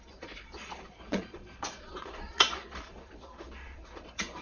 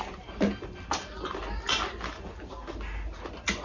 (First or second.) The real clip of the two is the second